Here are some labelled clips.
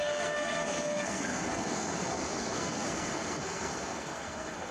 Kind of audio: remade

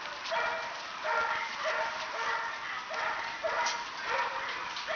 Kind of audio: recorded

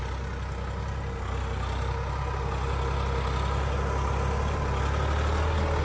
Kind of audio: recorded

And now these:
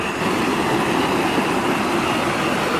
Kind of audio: recorded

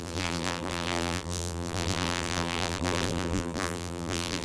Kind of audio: remade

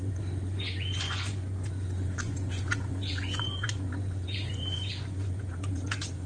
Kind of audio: remade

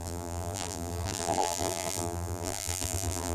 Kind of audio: remade